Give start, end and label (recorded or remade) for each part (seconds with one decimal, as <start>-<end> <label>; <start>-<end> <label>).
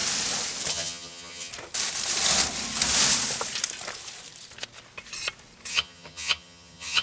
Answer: 0.0-0.7 recorded; 0.7-1.5 remade; 1.5-5.7 recorded; 5.7-7.0 remade